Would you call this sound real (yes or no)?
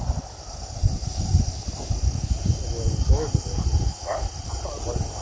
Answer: yes